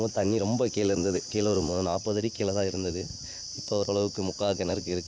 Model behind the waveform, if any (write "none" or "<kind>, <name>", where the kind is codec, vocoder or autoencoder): vocoder, Vocos